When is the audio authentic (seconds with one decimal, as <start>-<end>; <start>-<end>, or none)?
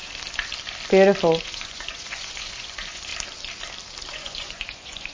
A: 0.0-1.4; 3.1-4.1